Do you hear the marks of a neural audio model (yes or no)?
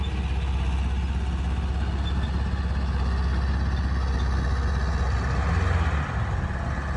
no